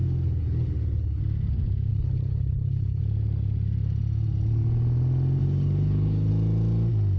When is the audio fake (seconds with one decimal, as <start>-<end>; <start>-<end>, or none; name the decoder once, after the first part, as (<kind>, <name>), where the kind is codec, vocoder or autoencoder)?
0.0-1.2 (codec, HILCodec); 1.9-3.0; 5.4-6.3